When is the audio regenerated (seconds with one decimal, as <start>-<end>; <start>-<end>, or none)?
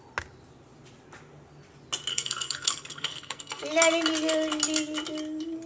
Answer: 2.1-3.6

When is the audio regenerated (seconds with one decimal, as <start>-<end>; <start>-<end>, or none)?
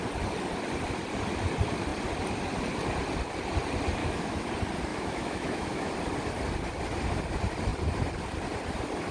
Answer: 4.0-4.5; 4.9-5.9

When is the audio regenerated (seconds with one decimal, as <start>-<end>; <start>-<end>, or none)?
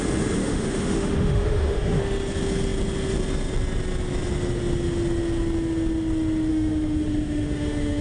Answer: 0.4-2.0; 6.5-8.0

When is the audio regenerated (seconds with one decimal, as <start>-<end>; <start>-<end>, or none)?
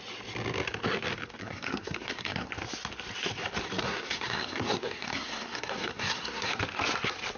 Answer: 1.4-2.5; 3.8-6.6